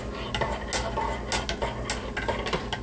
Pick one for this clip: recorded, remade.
recorded